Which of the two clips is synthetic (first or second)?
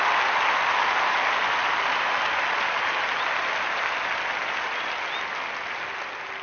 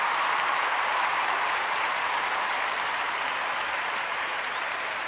second